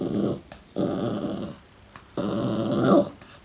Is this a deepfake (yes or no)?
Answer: no